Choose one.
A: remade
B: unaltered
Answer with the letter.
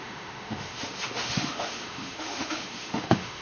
A